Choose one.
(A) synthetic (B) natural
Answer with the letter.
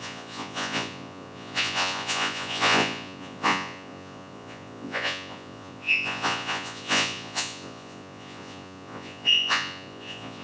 A